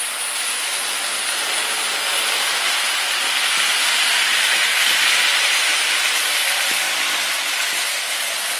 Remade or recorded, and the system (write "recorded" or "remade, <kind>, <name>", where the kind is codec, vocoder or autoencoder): recorded